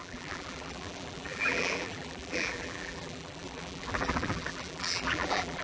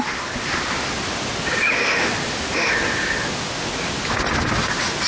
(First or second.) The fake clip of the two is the first